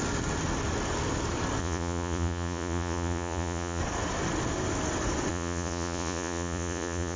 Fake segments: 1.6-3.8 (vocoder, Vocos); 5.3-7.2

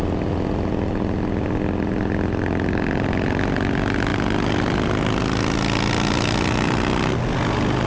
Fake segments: none

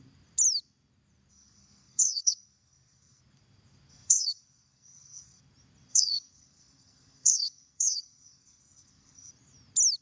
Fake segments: 1.3-3.2 (codec, SNAC); 3.9-5.4; 5.9-9.3

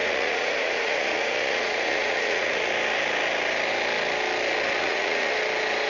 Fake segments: 0.0-2.7 (vocoder, Vocos); 4.8-5.3

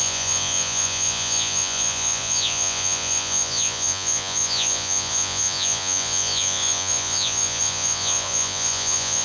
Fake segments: 0.0-9.2 (vocoder, Vocos)